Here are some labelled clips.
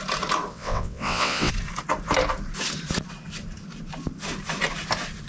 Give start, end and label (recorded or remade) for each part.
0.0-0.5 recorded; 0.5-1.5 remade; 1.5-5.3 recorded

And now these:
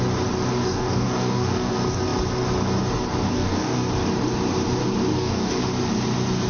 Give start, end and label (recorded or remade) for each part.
0.0-0.5 recorded; 0.5-1.7 remade; 1.7-3.3 recorded; 3.3-3.9 remade; 3.9-5.1 recorded; 5.1-5.6 remade; 5.6-6.5 recorded

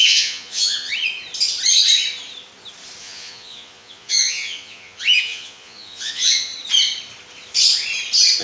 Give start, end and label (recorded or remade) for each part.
0.0-0.9 remade; 0.9-3.0 recorded; 3.0-6.5 remade; 6.5-8.4 recorded

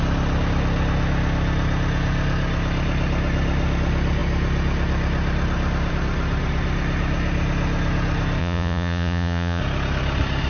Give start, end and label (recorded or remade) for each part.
0.0-8.4 recorded; 8.4-9.6 remade; 9.6-10.5 recorded

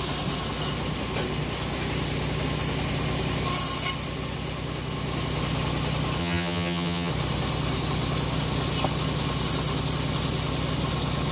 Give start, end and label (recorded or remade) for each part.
0.0-6.2 recorded; 6.2-7.1 remade; 7.1-11.3 recorded

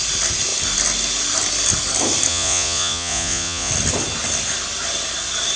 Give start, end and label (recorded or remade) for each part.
0.0-2.3 recorded; 2.3-3.7 remade; 3.7-5.6 recorded